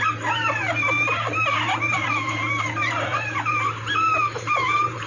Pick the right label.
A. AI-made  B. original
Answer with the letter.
A